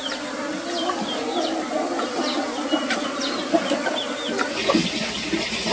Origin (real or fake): real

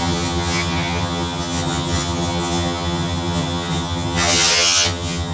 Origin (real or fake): fake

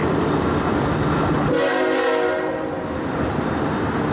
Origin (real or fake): real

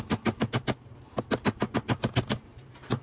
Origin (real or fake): real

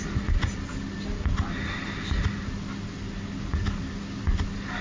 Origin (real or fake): real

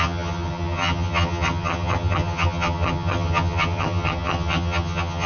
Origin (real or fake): fake